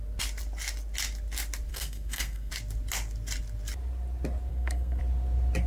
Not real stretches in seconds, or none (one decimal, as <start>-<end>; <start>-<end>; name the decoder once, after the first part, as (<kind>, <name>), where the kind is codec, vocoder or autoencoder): 1.7-2.5 (codec, SNAC); 4.5-5.0